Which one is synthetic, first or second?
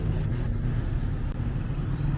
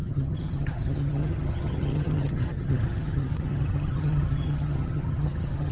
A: second